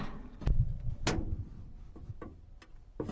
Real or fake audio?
real